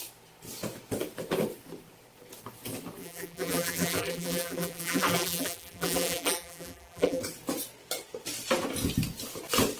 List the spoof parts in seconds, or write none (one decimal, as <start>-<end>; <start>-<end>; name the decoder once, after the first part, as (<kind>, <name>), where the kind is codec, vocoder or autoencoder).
3.0-7.2 (vocoder, BigVGAN v2)